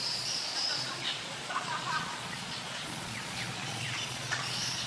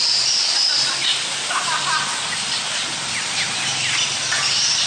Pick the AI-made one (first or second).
first